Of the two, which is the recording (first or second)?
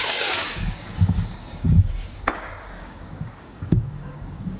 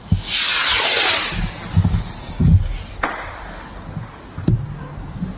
second